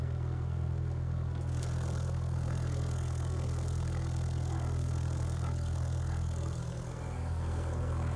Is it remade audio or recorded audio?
remade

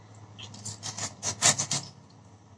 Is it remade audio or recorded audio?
recorded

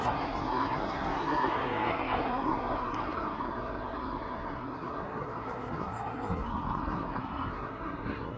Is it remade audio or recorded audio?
remade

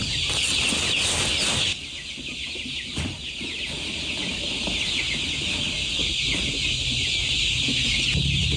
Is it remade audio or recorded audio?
recorded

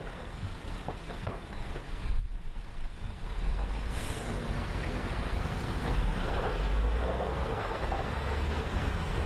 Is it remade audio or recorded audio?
remade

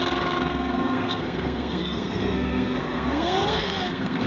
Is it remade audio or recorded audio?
remade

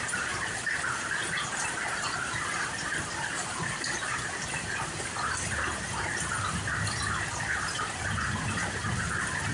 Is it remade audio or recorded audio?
recorded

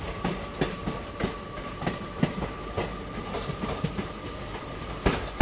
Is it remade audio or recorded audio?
recorded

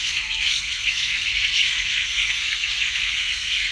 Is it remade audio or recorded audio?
remade